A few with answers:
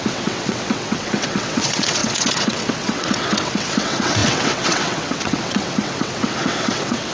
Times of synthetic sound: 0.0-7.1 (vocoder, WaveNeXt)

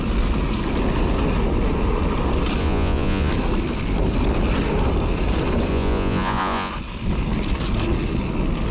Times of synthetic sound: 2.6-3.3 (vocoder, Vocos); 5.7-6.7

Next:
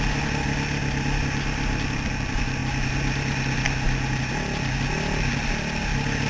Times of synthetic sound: none

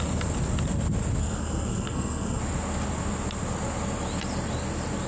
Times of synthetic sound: 1.2-2.4 (codec, SNAC)

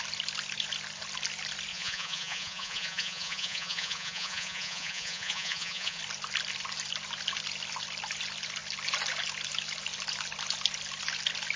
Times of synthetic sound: 1.7-6.0 (vocoder, Vocos)

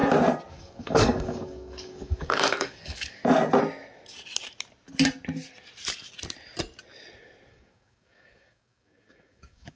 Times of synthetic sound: 0.5-3.2 (codec, DAC); 7.5-9.8

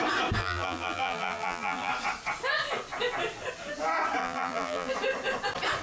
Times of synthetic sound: 0.4-1.9 (vocoder, BigVGAN v2); 4.2-4.9